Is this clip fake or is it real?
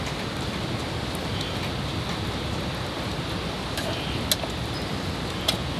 real